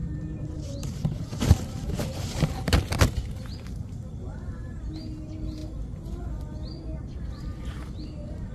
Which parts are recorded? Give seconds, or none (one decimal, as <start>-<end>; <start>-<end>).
2.7-8.5